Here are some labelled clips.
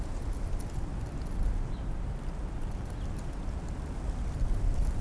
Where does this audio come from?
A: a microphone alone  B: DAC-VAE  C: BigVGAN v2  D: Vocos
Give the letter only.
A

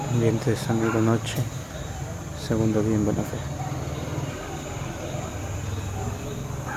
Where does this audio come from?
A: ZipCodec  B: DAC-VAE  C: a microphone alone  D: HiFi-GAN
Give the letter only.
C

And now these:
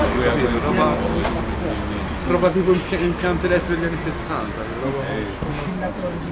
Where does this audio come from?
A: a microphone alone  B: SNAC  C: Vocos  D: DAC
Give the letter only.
A